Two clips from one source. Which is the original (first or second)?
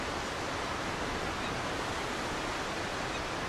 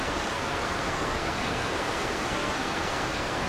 first